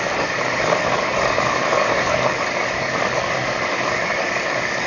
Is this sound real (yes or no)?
no